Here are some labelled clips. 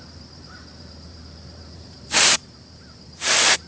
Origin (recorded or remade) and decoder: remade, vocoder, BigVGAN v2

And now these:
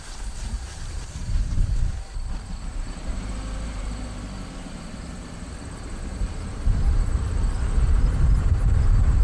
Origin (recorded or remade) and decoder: remade, vocoder, BigVGAN v2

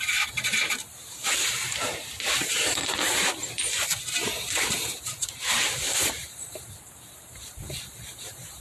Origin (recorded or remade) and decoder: remade, vocoder, BigVGAN v2